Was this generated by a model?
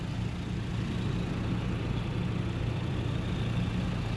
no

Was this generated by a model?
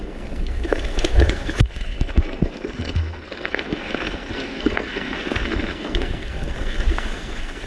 yes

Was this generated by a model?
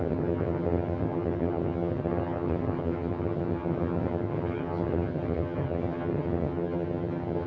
yes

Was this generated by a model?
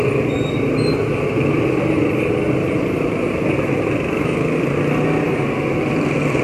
no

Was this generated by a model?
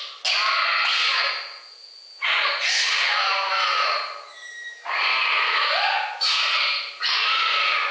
no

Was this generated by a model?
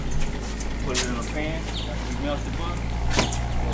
no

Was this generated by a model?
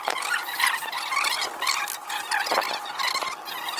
no